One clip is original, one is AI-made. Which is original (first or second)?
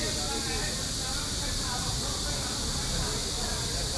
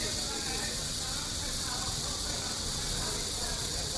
first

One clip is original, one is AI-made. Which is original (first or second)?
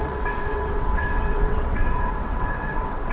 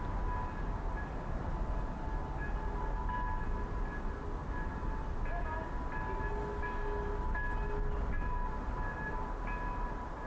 second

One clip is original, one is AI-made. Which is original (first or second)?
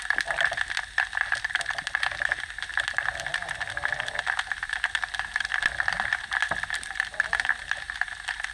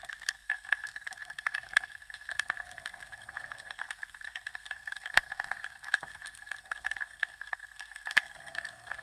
first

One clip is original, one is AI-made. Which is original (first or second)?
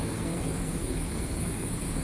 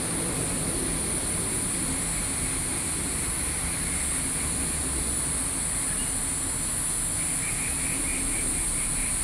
second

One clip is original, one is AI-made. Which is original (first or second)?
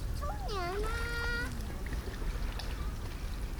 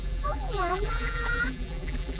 first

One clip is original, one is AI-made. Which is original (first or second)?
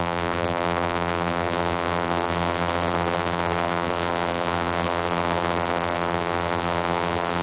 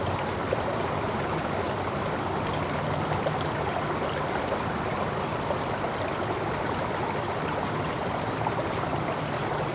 second